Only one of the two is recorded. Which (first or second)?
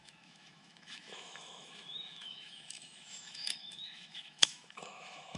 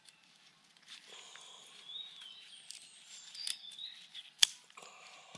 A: second